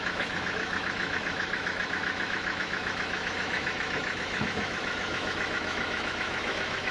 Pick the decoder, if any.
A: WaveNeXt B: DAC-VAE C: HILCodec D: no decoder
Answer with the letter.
B